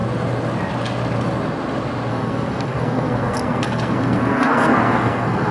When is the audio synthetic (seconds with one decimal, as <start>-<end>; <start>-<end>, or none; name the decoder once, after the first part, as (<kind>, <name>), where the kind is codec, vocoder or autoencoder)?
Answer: 2.1-5.5 (codec, SNAC)